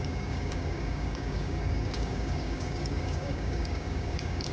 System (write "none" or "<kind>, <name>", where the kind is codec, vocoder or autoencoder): codec, DAC